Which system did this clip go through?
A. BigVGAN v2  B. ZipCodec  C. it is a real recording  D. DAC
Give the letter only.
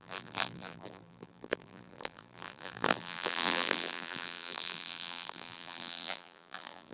A